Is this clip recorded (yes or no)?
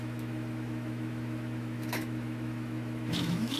no